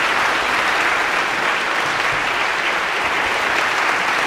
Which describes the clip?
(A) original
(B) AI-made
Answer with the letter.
A